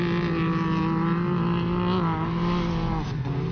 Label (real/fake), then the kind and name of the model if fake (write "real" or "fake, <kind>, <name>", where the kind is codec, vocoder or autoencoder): real